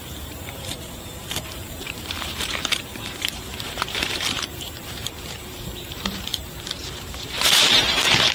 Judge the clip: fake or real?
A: fake